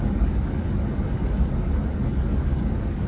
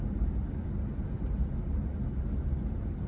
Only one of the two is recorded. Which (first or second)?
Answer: second